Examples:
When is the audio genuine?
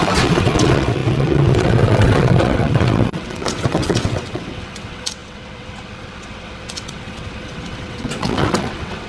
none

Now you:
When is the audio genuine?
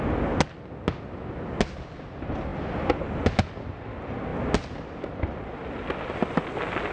0.0-6.9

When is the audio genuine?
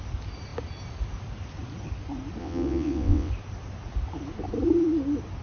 0.0-2.4; 3.3-5.4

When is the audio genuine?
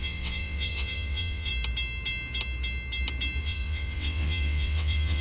1.5-3.4